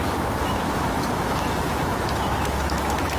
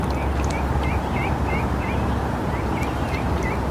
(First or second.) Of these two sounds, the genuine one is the second